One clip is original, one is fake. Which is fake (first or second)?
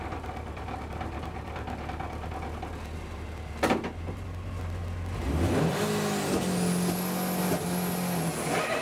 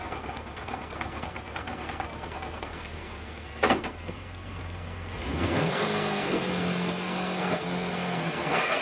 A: second